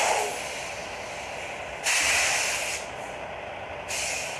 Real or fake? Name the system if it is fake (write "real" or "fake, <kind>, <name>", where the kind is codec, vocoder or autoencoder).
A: real